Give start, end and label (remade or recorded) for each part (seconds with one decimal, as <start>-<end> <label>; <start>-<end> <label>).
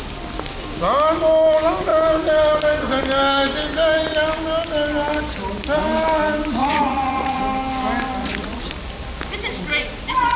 0.0-6.6 recorded; 6.6-7.4 remade; 7.4-8.2 recorded; 8.2-8.7 remade; 8.7-10.4 recorded